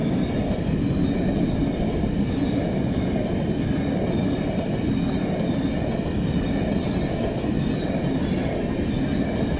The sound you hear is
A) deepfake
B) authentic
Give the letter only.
B